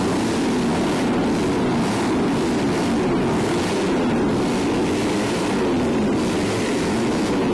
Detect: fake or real real